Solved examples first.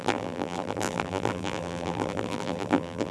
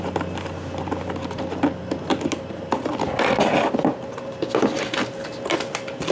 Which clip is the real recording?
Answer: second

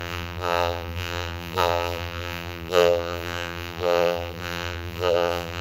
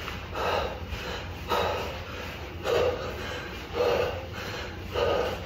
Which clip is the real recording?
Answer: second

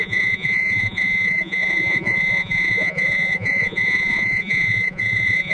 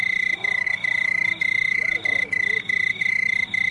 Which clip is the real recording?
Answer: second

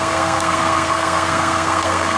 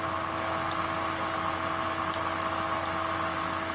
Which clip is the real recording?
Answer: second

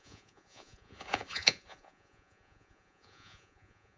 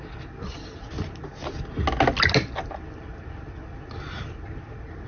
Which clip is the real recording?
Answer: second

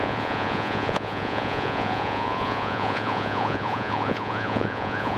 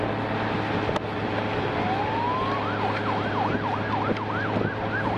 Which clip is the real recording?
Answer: second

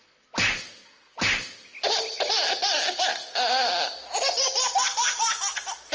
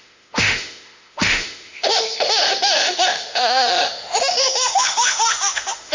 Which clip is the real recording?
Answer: first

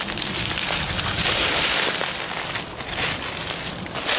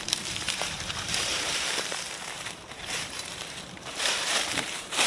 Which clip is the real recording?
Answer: first